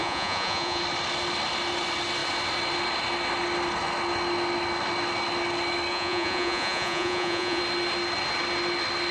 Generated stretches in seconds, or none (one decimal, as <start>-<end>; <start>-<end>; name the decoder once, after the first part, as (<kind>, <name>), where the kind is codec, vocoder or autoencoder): 0.0-0.8 (vocoder, Vocos); 5.9-7.6